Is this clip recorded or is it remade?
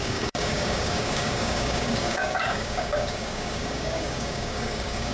remade